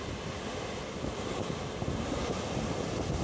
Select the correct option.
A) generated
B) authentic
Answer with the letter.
A